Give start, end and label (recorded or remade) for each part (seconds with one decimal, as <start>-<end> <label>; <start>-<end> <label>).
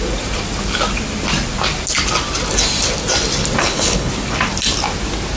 0.0-3.6 recorded; 3.6-4.1 remade; 4.1-5.4 recorded